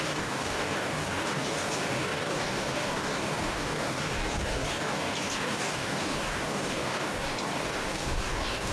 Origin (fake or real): fake